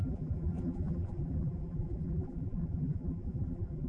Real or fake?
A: fake